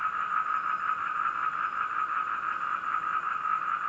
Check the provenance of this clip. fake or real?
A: real